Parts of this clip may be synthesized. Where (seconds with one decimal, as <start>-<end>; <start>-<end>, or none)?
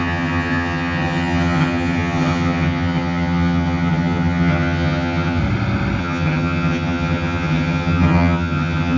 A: 0.0-5.4; 6.0-9.0